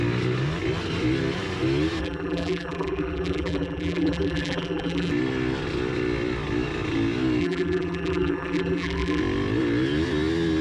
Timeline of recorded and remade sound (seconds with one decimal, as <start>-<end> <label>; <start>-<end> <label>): 0.0-2.0 recorded; 2.0-5.1 remade; 5.1-7.4 recorded; 7.4-9.2 remade; 9.2-10.6 recorded